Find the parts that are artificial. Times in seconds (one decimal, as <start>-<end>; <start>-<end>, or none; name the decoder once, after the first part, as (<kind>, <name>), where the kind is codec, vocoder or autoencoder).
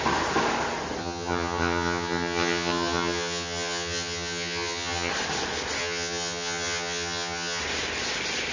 1.0-5.1 (vocoder, HiFi-GAN); 5.8-7.6